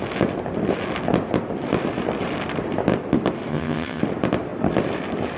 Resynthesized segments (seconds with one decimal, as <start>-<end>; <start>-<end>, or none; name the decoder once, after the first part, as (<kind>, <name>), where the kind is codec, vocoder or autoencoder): 3.5-4.0 (vocoder, HiFi-GAN)